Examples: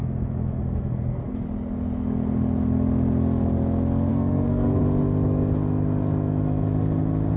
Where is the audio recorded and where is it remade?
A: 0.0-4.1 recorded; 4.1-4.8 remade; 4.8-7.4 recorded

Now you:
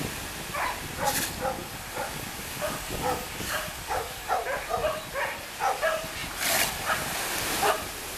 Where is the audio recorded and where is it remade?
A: 0.0-1.6 recorded; 1.6-4.3 remade; 4.3-8.2 recorded

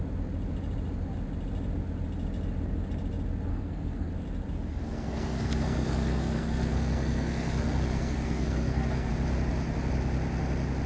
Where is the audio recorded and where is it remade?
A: 0.0-3.5 recorded; 3.5-4.1 remade; 4.1-4.7 recorded; 4.7-9.1 remade; 9.1-10.9 recorded

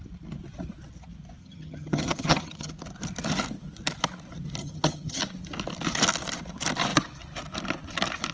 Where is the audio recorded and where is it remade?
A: 0.0-1.4 recorded; 1.4-2.7 remade; 2.7-4.6 recorded; 4.6-5.2 remade; 5.2-8.3 recorded

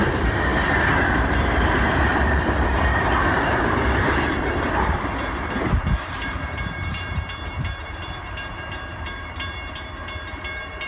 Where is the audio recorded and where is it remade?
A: 0.0-0.5 remade; 0.5-1.1 recorded; 1.1-2.7 remade; 2.7-3.3 recorded; 3.3-10.9 remade

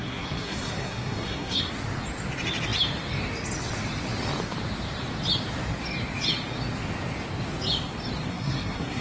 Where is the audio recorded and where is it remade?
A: 0.0-1.7 remade; 1.7-8.3 recorded; 8.3-9.0 remade